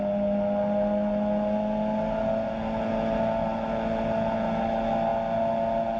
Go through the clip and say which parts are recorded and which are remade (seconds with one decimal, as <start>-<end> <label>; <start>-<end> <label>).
0.0-6.0 recorded